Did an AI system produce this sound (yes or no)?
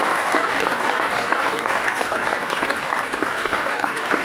yes